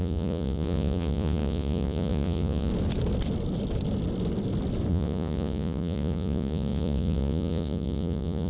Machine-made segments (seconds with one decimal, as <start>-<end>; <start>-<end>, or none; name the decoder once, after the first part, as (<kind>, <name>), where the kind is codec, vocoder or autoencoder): 0.0-2.7 (vocoder, Vocos); 4.9-8.5